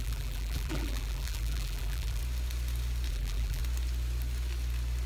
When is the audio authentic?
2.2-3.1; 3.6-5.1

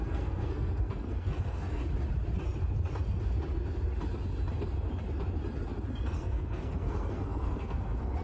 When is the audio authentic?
1.8-5.9